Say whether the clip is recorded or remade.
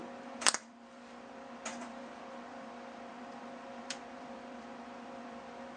remade